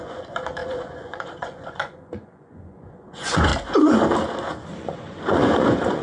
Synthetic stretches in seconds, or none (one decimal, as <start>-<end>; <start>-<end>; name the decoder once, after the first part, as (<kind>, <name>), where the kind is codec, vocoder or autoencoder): 0.0-3.5 (vocoder, Vocos); 4.8-6.0

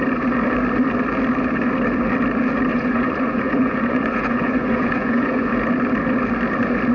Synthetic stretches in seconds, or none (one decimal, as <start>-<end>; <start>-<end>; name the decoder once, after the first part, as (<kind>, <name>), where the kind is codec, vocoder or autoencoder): 2.7-5.5 (vocoder, Vocos)